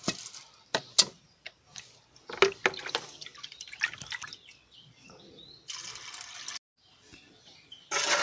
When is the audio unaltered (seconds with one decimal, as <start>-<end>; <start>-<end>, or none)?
0.0-8.2